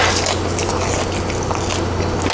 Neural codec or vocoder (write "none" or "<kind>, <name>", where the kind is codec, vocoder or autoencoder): none